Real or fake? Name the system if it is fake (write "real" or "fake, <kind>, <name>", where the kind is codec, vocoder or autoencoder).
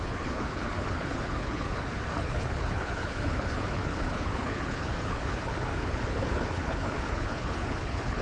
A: fake, codec, HILCodec